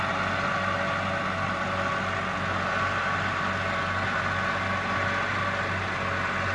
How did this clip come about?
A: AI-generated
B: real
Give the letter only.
B